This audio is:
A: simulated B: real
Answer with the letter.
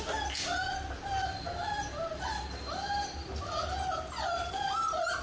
B